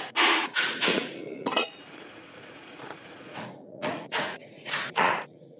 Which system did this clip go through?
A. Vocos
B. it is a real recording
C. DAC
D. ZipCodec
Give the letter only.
A